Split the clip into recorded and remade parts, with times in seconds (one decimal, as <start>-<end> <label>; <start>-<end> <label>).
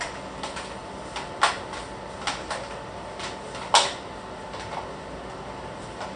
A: 0.0-6.2 recorded